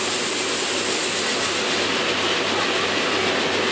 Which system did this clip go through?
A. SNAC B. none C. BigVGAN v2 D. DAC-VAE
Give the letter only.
B